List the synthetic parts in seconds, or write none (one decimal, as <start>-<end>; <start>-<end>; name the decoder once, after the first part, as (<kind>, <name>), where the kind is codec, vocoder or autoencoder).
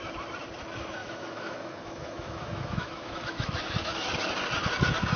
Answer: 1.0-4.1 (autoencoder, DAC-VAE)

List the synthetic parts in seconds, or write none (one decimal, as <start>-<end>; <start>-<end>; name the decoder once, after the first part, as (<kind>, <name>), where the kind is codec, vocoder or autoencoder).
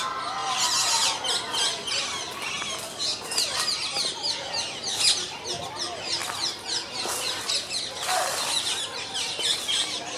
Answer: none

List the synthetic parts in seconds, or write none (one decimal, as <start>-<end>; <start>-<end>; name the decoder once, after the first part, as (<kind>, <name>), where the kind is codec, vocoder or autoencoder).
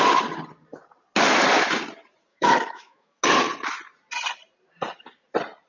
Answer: 2.3-3.2 (autoencoder, DAC-VAE)